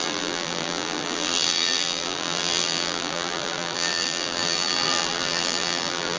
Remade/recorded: remade